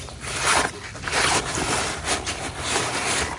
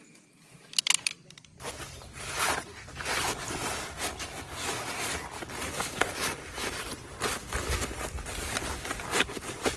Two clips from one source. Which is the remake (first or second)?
first